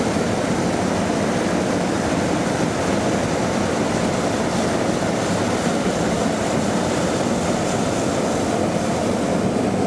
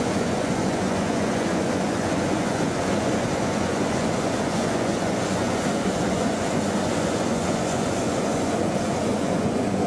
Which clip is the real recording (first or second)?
first